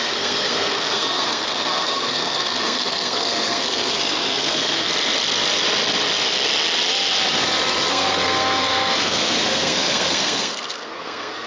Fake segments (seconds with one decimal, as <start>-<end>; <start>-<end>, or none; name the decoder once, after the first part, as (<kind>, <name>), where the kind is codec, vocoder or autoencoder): 0.0-4.9 (codec, SNAC); 7.9-11.5

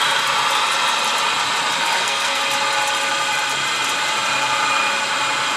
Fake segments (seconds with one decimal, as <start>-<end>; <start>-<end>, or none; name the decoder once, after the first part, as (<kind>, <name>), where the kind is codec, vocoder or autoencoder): 1.8-2.4 (codec, SNAC)

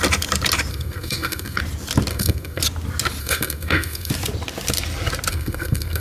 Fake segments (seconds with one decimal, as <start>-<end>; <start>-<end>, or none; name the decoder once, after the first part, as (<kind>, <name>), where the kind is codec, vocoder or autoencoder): 0.7-1.6 (codec, SNAC); 2.1-2.6; 3.2-4.1; 5.3-6.0

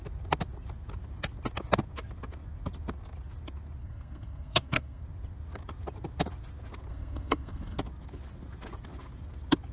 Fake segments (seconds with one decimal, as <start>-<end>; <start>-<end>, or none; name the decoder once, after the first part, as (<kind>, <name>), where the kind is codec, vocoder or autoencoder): 3.8-5.0 (codec, SNAC); 6.9-7.8

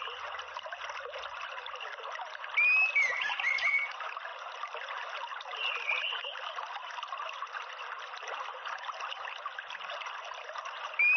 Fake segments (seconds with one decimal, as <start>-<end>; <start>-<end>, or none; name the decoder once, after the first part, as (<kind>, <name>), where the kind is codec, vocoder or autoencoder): none

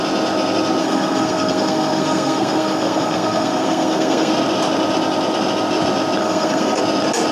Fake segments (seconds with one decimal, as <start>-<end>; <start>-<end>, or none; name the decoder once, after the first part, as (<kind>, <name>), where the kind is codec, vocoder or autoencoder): 0.8-4.3 (codec, SNAC); 6.2-6.8

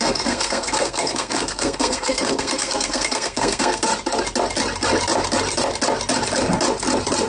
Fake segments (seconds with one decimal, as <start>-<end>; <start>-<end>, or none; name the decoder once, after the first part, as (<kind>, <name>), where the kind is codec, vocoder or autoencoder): 0.0-3.9 (codec, SNAC)